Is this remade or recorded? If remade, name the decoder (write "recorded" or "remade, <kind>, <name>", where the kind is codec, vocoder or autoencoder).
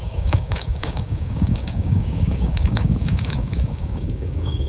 remade, codec, DAC